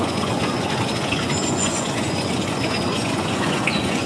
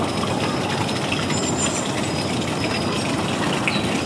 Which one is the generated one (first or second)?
first